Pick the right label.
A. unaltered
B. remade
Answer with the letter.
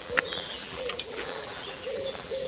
B